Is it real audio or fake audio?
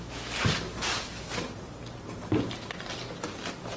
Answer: real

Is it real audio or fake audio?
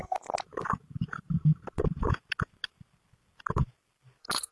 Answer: real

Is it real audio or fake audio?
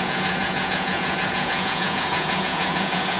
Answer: fake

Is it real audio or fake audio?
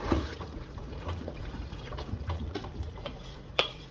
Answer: fake